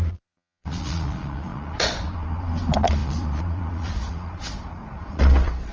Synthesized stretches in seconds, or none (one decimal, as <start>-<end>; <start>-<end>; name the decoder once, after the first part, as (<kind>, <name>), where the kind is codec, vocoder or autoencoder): 0.0-5.7 (vocoder, Vocos)